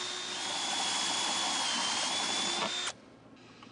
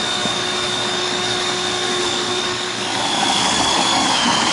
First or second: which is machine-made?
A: second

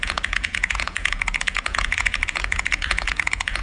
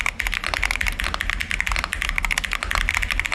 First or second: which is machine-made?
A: first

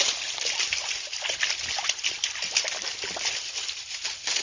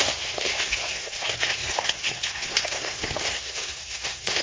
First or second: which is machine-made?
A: second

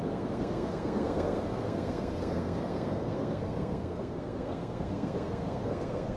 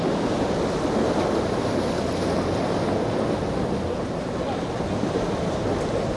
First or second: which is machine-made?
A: first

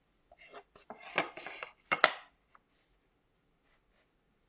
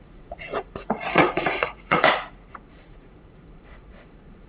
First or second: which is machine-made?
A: second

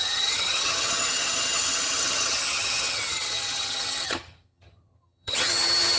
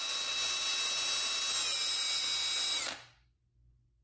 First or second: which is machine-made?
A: first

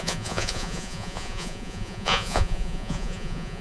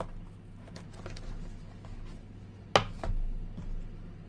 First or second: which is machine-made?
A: first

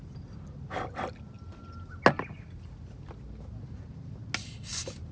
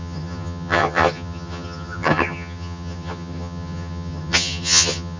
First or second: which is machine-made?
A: second